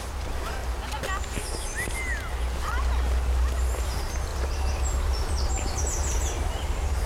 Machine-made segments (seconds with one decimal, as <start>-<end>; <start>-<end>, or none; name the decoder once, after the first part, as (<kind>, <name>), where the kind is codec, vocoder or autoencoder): 0.0-0.6 (vocoder, BigVGAN v2); 3.8-4.3; 4.9-7.1